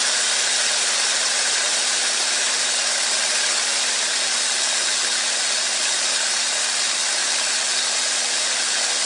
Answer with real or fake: real